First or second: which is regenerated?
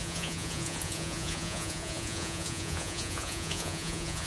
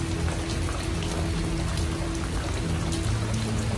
first